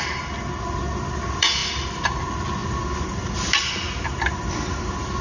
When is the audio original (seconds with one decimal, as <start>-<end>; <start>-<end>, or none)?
0.0-5.2